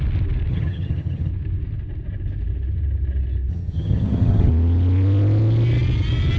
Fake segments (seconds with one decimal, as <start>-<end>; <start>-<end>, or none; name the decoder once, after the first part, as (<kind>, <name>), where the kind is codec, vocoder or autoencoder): 0.5-1.3 (vocoder, HiFi-GAN); 3.5-4.5